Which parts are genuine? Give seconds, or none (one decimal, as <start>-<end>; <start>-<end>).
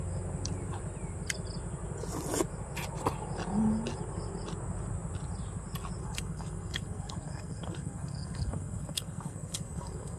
0.0-6.0